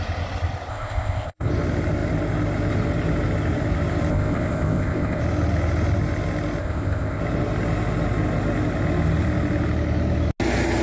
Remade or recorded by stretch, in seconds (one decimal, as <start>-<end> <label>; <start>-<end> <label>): 0.0-0.7 recorded; 0.7-1.5 remade; 1.5-4.1 recorded; 4.1-5.2 remade; 5.2-6.6 recorded; 6.6-7.2 remade; 7.2-10.8 recorded